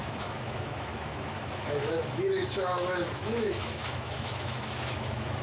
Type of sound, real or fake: fake